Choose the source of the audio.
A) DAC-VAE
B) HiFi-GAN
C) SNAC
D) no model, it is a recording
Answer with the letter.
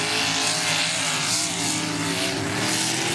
D